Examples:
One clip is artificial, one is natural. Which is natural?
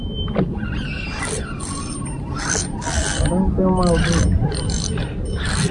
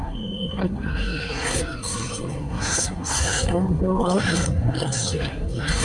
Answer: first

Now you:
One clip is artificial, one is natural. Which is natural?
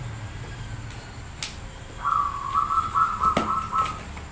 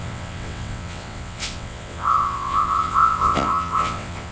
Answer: first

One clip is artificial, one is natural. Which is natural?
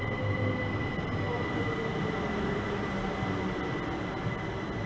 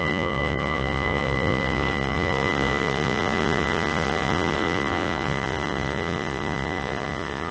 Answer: first